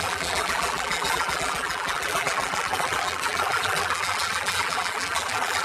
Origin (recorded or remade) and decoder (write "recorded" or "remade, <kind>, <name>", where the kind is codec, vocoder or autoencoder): remade, vocoder, BigVGAN v2